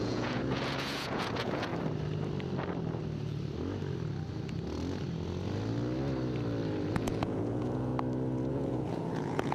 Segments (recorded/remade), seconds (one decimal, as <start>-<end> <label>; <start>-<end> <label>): 0.0-1.7 remade; 1.7-6.9 recorded; 6.9-7.9 remade; 7.9-8.5 recorded; 8.5-9.5 remade